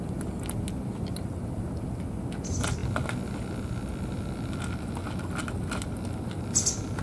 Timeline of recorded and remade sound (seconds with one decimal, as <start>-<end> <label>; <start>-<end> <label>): 0.0-7.0 recorded